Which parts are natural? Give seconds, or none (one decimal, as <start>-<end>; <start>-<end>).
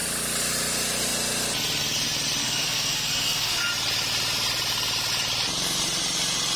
0.0-2.4; 3.6-6.6